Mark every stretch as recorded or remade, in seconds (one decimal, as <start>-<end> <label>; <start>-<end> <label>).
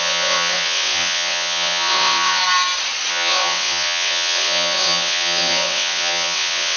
0.0-2.4 remade; 2.4-3.1 recorded; 3.1-6.8 remade